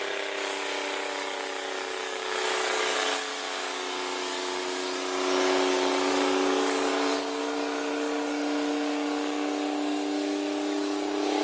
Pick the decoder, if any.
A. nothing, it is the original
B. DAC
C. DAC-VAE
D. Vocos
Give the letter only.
B